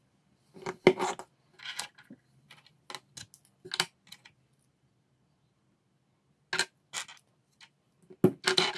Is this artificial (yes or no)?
no